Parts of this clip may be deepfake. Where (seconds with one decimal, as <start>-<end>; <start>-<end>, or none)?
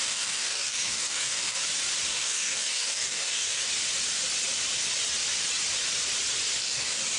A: 0.0-1.6; 2.1-3.7; 6.6-7.2